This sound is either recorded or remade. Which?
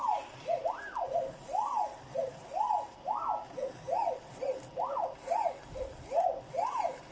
recorded